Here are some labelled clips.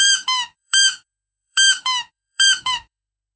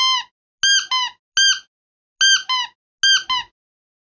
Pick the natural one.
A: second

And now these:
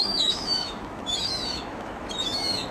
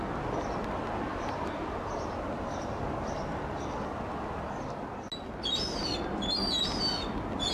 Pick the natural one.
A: second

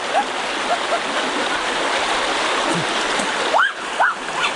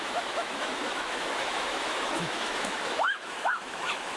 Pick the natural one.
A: first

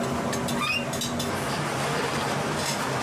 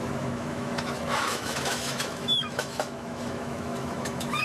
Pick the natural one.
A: first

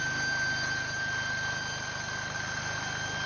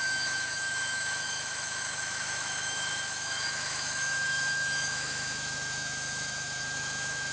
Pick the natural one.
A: first